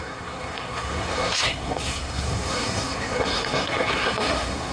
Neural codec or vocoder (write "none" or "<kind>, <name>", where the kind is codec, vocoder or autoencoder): codec, SNAC